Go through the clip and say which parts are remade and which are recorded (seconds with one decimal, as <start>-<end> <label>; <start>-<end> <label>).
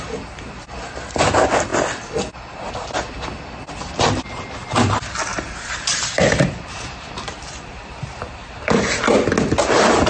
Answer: 0.0-5.3 recorded; 5.3-9.0 remade; 9.0-10.1 recorded